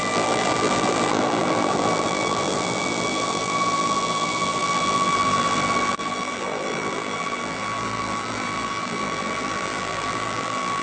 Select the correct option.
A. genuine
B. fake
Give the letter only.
B